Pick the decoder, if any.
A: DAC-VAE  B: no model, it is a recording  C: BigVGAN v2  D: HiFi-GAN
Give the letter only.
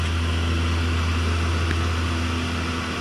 B